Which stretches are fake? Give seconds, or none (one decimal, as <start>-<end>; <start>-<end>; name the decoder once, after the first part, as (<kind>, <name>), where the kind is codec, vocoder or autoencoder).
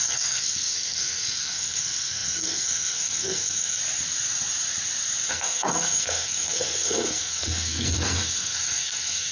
0.0-3.8 (codec, SNAC); 5.3-9.3